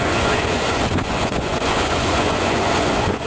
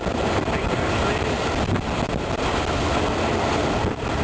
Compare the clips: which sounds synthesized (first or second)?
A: first